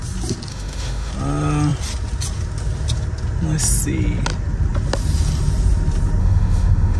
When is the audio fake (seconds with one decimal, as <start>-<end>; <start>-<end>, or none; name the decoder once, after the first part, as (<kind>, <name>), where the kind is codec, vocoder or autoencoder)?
0.5-1.1 (autoencoder, DAC-VAE); 6.2-7.0